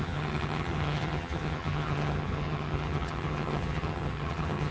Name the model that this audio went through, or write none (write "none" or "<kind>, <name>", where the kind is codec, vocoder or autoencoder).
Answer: vocoder, HiFi-GAN